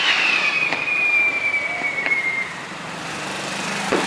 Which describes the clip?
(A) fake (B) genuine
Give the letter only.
A